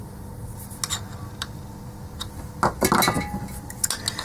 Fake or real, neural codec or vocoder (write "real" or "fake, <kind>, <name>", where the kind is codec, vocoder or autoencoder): real